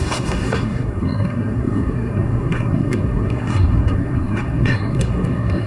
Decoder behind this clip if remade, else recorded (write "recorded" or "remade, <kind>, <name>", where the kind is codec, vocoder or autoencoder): remade, codec, SNAC